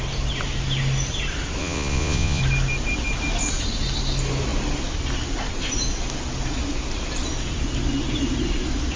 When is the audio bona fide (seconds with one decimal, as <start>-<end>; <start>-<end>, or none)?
0.0-1.6; 2.4-9.0